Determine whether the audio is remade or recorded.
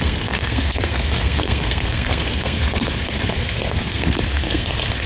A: remade